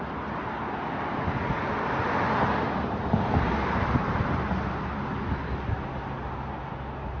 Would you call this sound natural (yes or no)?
yes